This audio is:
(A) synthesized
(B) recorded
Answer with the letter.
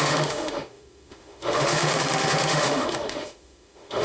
A